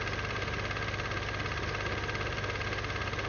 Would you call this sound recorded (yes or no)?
yes